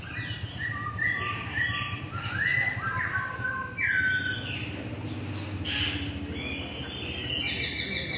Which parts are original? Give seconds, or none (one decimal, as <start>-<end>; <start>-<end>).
0.0-2.5; 3.2-8.2